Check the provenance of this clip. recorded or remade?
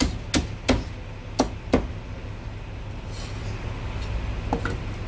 recorded